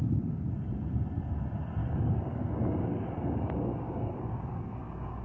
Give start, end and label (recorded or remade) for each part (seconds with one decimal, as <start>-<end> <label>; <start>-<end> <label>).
0.0-1.8 recorded; 1.8-5.2 remade